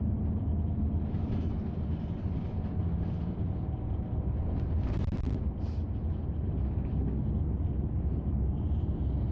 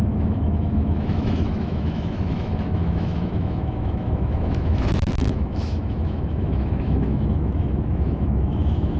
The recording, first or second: first